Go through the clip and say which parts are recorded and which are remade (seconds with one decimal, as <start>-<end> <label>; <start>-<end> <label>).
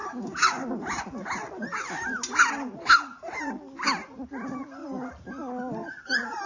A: 0.0-6.5 recorded